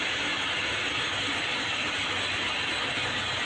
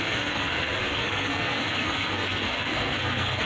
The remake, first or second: second